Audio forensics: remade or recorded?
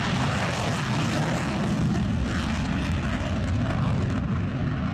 recorded